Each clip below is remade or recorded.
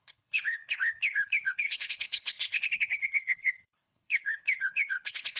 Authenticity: remade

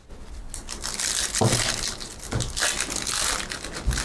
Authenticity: recorded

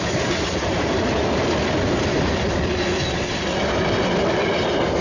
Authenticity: recorded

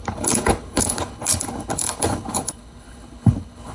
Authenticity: remade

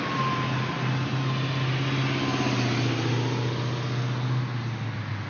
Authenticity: recorded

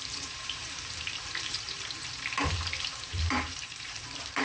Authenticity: remade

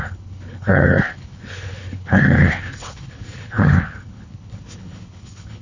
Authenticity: remade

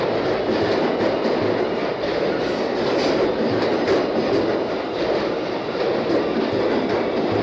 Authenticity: recorded